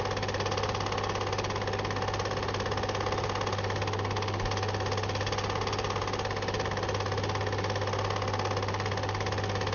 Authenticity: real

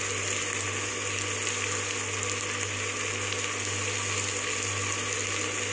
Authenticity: real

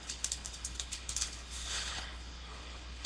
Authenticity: fake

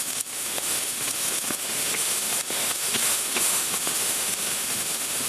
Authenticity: fake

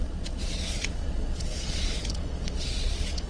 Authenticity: fake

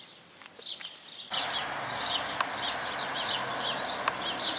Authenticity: real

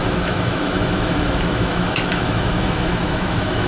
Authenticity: fake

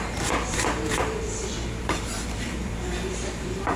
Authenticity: fake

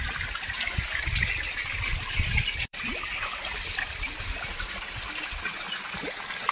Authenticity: fake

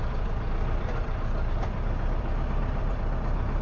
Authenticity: fake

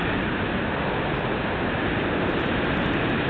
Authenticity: real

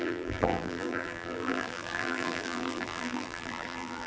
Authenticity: fake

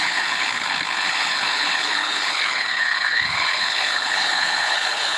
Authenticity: fake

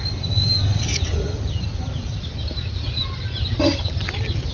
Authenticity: real